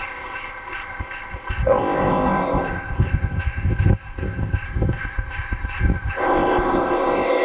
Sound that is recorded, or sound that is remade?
remade